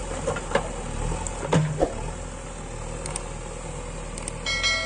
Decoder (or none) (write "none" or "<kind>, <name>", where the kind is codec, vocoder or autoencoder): none